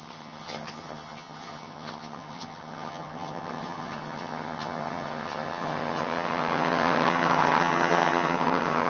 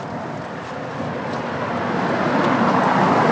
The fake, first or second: first